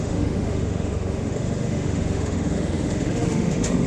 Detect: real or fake fake